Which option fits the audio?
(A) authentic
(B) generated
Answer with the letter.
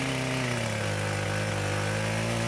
A